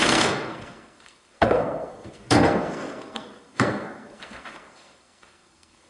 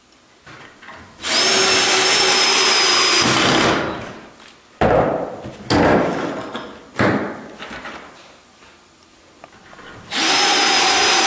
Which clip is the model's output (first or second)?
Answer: first